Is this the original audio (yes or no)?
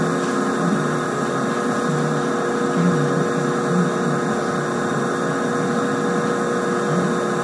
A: yes